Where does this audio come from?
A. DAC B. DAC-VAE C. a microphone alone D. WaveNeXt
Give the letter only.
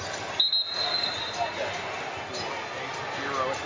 C